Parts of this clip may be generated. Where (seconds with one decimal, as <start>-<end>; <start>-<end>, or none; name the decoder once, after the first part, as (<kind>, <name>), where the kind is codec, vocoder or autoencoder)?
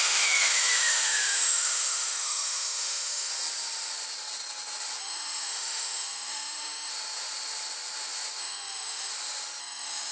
0.0-3.3 (autoencoder, DAC-VAE); 5.0-6.9; 8.4-9.1; 9.6-10.1